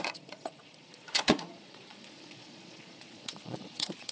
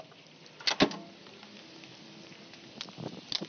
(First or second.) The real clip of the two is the second